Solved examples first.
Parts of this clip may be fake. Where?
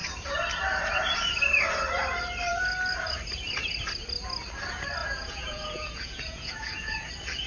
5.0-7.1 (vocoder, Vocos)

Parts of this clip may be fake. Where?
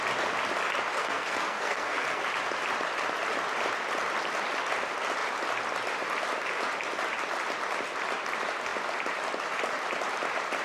0.9-2.2 (codec, SNAC)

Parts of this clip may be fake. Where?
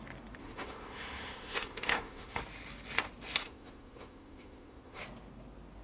0.4-2.4 (autoencoder, DAC-VAE); 3.4-5.0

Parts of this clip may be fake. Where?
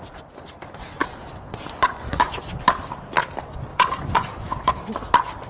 1.0-2.6 (vocoder, Vocos); 3.7-4.7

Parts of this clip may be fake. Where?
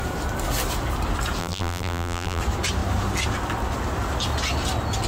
1.4-2.4 (vocoder, BigVGAN v2)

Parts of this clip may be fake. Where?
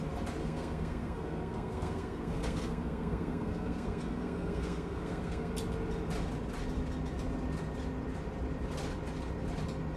0.4-5.5 (codec, SNAC)